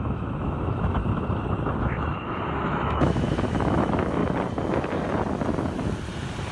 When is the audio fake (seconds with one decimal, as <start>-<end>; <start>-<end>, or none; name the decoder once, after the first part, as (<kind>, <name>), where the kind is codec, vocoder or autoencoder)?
0.0-1.0 (autoencoder, DAC-VAE); 1.8-4.2